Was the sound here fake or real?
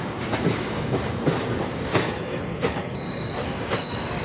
fake